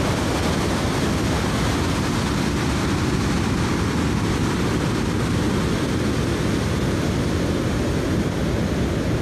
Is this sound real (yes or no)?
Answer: yes